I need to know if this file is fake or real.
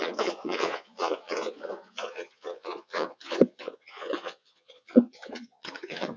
fake